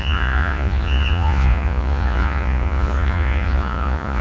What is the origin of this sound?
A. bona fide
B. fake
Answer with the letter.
B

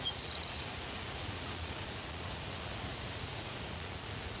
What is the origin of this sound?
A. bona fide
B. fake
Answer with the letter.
B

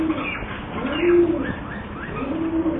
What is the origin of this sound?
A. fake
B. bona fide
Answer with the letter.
B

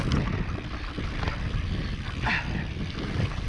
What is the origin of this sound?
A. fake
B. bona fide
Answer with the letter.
B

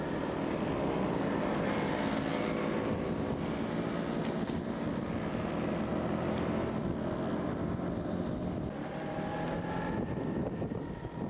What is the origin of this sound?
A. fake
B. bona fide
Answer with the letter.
B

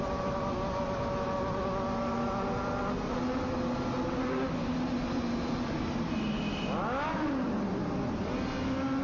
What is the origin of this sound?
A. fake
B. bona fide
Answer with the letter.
B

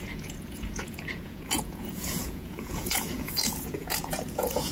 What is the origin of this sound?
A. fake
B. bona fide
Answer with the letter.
A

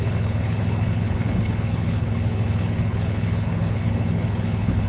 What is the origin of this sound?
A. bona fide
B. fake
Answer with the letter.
B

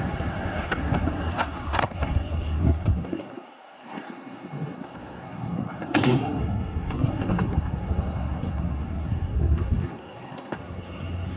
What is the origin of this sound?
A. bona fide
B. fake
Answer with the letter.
B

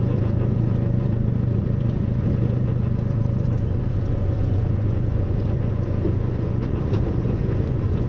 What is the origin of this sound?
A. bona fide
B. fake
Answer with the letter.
B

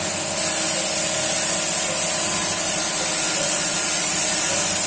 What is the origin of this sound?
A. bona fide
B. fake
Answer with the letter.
A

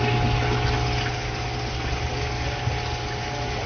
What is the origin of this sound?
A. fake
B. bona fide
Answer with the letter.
B